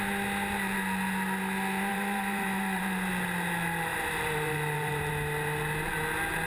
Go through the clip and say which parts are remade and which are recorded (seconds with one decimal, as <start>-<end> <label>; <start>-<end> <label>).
0.0-1.9 recorded; 1.9-3.1 remade; 3.1-3.9 recorded; 3.9-5.1 remade; 5.1-6.5 recorded